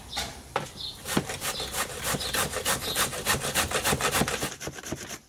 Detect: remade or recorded recorded